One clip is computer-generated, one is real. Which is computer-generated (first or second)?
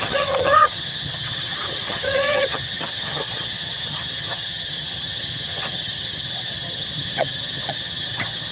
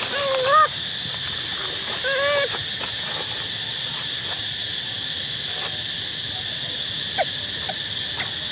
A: first